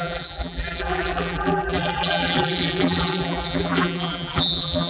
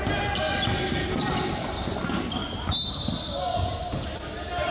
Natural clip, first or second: second